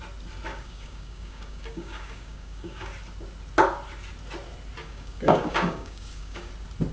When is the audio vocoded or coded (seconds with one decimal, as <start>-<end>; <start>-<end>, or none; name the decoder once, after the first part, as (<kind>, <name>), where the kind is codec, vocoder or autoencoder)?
0.5-2.9 (codec, DAC); 4.8-6.5

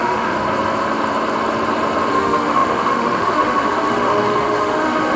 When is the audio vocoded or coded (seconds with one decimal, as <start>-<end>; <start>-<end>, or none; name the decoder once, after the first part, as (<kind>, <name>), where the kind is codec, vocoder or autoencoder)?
0.0-0.4 (autoencoder, DAC-VAE); 2.1-5.2

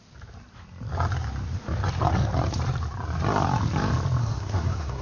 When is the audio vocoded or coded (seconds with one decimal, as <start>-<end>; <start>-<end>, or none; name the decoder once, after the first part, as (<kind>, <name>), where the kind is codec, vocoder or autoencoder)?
4.2-5.0 (codec, SNAC)

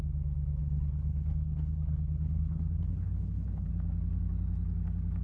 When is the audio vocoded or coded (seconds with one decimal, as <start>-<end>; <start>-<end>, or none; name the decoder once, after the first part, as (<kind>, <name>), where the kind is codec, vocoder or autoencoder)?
0.6-3.7 (codec, HILCodec)

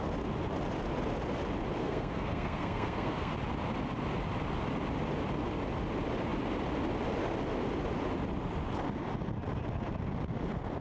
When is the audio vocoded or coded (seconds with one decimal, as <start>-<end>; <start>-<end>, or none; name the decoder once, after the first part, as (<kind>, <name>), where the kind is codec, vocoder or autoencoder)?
1.8-3.3 (codec, SNAC)

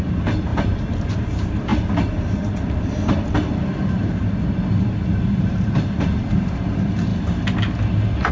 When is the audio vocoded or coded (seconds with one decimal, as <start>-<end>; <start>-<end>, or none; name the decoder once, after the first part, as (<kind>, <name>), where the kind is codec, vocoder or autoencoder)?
0.0-1.7 (vocoder, BigVGAN v2); 5.4-7.1